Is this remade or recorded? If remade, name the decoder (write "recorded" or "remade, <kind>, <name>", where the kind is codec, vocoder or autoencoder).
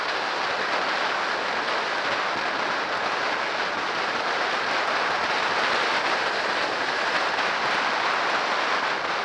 recorded